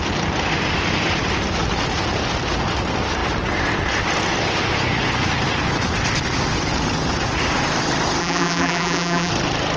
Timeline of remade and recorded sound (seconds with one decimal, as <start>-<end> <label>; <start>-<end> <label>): 0.0-8.2 recorded; 8.2-9.3 remade; 9.3-9.8 recorded